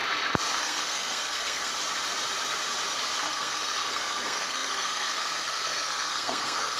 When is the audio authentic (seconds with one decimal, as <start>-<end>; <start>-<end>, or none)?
0.0-0.6; 1.7-3.3